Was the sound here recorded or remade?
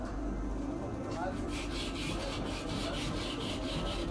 recorded